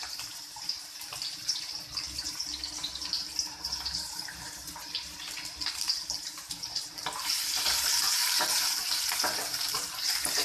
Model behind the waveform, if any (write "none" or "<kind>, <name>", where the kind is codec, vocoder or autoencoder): vocoder, BigVGAN v2